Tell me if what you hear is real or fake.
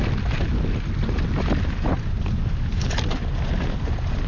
real